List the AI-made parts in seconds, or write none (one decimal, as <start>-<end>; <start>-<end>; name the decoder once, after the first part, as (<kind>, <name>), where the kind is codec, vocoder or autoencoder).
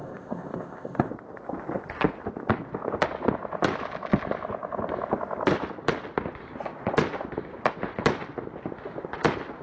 0.0-1.1 (codec, ZipCodec)